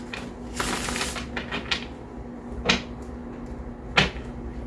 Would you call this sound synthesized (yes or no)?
no